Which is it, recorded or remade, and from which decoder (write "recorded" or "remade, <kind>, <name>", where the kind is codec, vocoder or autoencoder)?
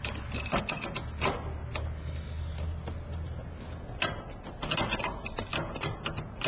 recorded